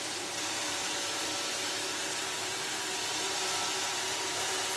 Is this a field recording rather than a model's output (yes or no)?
no